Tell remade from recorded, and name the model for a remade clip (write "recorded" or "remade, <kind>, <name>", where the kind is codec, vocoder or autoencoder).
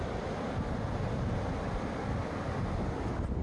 recorded